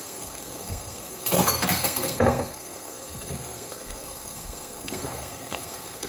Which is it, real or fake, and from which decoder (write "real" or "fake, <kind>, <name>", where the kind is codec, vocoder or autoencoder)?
fake, codec, SNAC